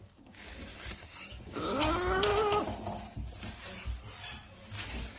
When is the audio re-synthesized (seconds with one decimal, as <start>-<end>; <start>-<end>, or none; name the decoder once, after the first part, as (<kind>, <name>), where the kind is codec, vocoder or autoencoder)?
0.0-2.3 (codec, DAC)